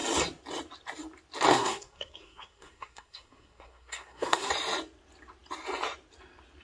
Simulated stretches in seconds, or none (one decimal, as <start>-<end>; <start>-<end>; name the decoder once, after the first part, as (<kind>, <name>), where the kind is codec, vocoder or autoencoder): 1.5-4.5 (codec, SNAC)